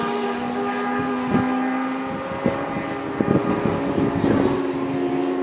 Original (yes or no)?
yes